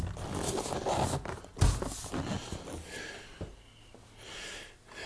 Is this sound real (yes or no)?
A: yes